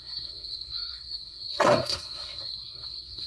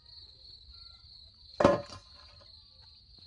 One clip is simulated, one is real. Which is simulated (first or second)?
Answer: first